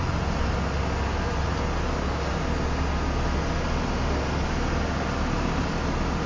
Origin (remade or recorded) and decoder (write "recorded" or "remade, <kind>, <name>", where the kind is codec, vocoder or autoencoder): recorded